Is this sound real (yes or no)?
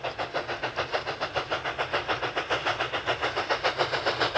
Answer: yes